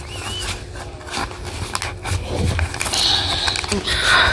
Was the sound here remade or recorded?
recorded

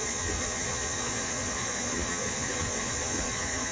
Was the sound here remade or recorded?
remade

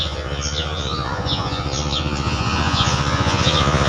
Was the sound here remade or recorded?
remade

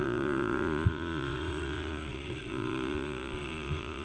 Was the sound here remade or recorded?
remade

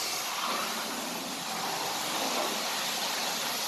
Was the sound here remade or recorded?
recorded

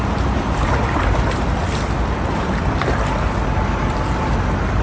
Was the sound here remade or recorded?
recorded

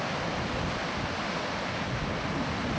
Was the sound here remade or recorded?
recorded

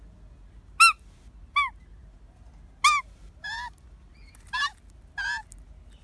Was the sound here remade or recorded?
recorded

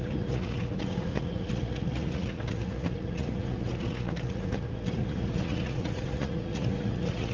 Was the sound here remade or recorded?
remade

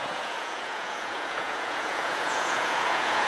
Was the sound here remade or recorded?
remade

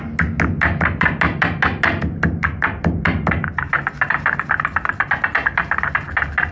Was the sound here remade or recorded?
recorded